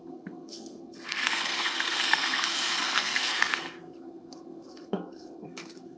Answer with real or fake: fake